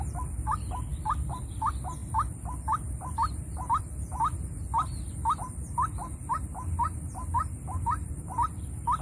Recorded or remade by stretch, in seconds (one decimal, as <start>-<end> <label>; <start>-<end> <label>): 0.0-0.9 recorded; 0.9-1.4 remade; 1.4-9.0 recorded